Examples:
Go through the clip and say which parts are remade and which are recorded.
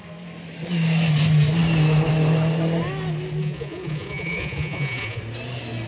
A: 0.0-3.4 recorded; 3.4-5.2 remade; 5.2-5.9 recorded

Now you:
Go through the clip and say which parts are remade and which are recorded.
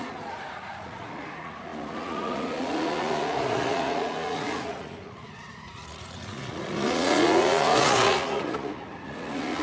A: 0.0-9.6 remade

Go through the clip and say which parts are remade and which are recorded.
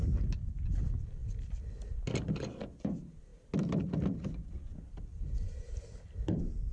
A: 0.0-6.7 recorded